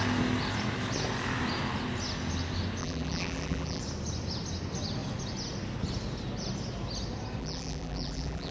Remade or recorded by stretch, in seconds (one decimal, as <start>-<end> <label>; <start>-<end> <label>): 0.0-2.8 recorded; 2.8-3.8 remade; 3.8-7.4 recorded; 7.4-8.5 remade